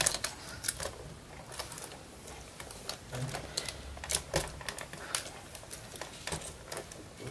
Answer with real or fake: real